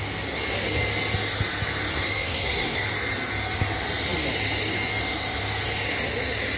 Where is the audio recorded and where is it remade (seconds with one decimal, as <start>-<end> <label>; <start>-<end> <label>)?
0.0-1.9 recorded; 1.9-2.9 remade; 2.9-6.6 recorded